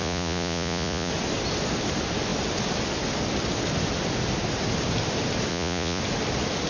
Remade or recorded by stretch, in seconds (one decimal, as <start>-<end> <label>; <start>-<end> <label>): 0.0-1.1 remade; 1.1-5.5 recorded; 5.5-6.0 remade; 6.0-6.7 recorded